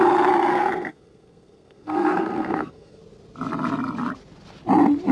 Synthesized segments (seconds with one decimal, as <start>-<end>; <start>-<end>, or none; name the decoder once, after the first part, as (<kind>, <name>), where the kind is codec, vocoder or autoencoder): 0.5-3.0 (codec, SNAC)